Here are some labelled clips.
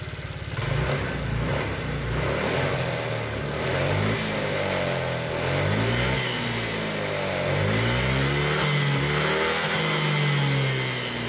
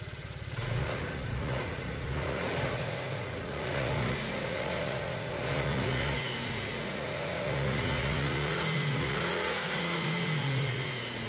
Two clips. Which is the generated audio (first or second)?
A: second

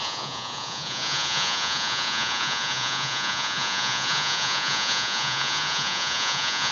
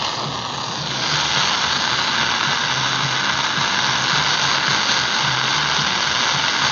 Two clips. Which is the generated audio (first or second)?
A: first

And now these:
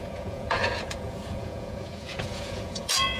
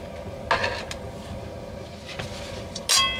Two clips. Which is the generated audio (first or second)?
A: first